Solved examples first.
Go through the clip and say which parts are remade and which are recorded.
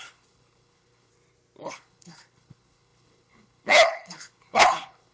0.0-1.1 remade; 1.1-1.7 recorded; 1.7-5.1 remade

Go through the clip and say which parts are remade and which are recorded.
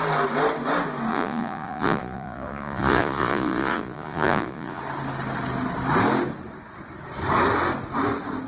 0.0-1.1 recorded; 1.1-4.8 remade; 4.8-8.5 recorded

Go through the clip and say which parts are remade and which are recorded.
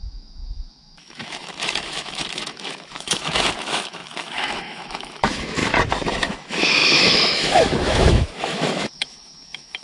0.0-5.6 remade; 5.6-6.1 recorded; 6.1-9.8 remade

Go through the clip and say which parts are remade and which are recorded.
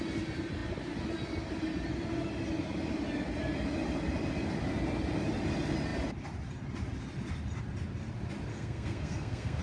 0.0-8.5 recorded; 8.5-9.6 remade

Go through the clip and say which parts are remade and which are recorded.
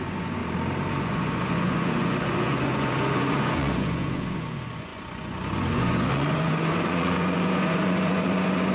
0.0-0.4 remade; 0.4-0.9 recorded; 0.9-8.7 remade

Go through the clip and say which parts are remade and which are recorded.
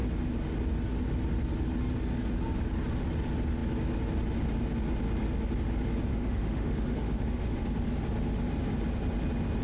0.0-6.1 recorded; 6.1-7.6 remade; 7.6-9.6 recorded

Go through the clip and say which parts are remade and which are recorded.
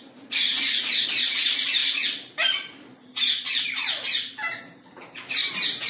0.0-5.9 recorded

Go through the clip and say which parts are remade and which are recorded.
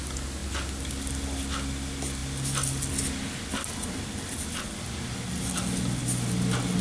0.0-6.8 recorded